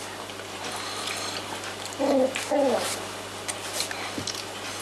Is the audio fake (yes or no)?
no